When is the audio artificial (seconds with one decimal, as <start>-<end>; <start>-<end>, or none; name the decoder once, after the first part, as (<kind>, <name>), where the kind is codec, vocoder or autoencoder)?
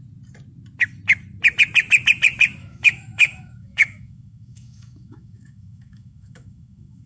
2.6-7.1 (autoencoder, DAC-VAE)